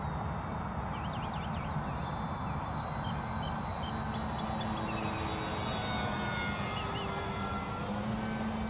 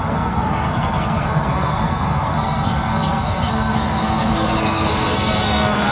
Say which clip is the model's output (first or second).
second